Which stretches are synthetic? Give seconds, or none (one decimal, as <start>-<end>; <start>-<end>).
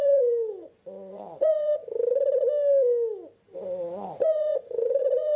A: 0.0-1.8; 4.1-5.4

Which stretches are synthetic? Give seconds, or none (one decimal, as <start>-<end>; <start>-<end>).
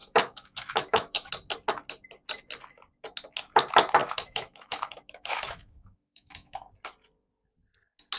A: 0.0-1.3; 4.0-6.7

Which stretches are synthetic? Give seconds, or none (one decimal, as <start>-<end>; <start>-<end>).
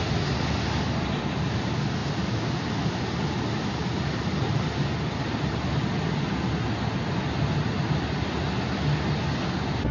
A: none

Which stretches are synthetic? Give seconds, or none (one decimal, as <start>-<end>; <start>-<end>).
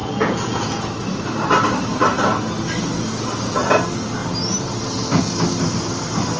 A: 0.0-0.9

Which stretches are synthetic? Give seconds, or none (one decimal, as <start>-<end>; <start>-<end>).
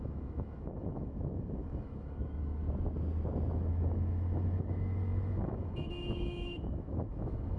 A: 0.0-2.6; 3.5-7.6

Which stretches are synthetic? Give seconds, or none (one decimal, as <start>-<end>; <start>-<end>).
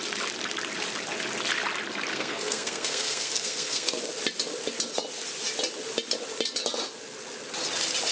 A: 2.1-4.0